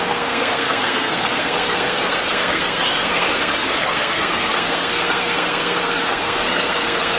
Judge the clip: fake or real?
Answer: fake